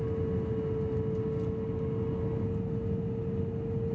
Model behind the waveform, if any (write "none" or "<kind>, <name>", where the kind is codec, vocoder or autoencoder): none